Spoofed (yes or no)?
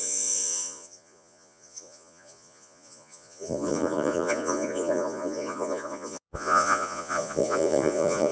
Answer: yes